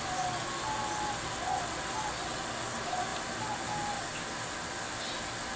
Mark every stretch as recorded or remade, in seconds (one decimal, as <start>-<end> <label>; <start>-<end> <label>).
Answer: 0.0-5.6 recorded